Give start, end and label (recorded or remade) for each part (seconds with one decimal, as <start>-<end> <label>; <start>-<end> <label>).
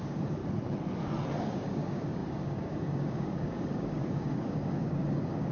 0.0-0.4 remade; 0.4-1.4 recorded; 1.4-5.5 remade